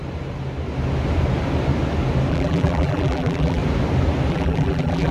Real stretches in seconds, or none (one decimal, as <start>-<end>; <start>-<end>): 0.0-2.3; 3.6-4.3